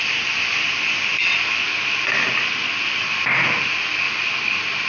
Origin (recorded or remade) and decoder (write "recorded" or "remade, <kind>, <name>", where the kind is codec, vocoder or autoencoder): recorded